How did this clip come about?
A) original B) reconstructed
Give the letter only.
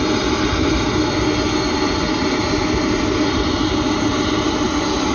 A